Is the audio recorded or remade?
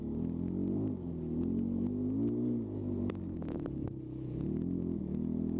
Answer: recorded